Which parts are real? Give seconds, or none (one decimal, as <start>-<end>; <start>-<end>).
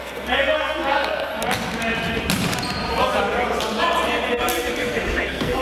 1.3-4.7